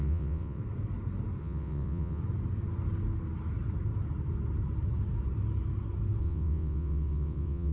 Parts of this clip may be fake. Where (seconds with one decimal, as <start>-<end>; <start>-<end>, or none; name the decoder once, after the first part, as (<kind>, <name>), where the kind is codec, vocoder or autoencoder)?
0.0-0.6 (vocoder, WaveNeXt); 1.4-2.2; 6.2-7.7